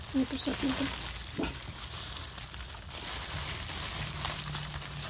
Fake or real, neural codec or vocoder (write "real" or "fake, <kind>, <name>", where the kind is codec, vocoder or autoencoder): real